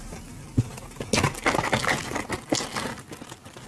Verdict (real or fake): real